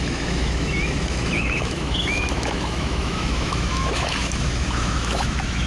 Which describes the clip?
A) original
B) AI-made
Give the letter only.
B